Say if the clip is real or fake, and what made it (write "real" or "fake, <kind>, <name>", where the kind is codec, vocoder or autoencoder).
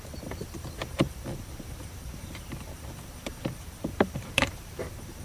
fake, vocoder, BigVGAN v2